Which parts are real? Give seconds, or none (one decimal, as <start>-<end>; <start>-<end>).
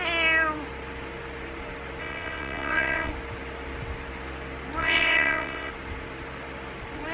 0.0-2.0; 3.1-4.8; 5.7-7.1